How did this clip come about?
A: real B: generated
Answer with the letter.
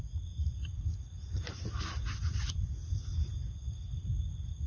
A